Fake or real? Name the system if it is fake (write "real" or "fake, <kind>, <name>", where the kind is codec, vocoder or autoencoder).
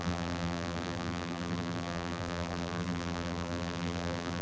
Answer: fake, vocoder, BigVGAN v2